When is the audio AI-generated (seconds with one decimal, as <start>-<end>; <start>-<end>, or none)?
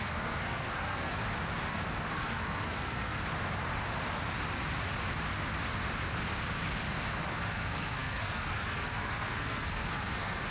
0.0-1.2; 1.7-3.2; 7.3-10.5